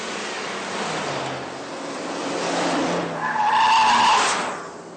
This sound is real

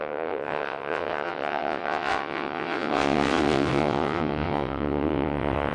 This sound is fake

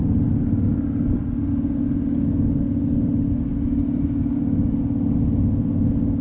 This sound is real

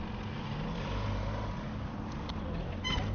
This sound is real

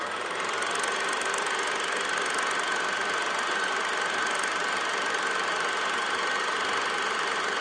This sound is real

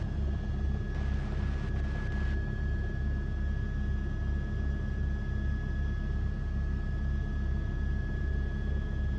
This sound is real